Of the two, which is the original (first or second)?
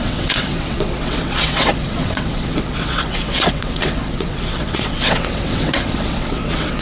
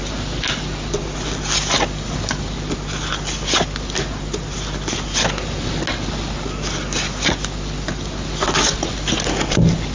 second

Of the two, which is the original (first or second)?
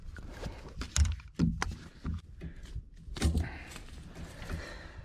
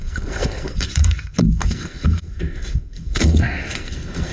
first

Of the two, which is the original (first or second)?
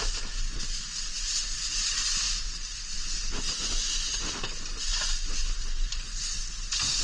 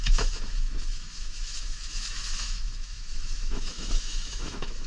first